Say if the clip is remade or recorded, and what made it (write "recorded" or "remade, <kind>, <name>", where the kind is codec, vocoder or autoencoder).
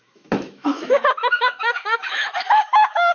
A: remade, autoencoder, DAC-VAE